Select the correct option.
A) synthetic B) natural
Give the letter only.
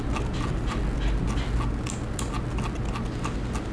B